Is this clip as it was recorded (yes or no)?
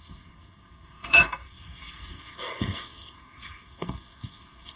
no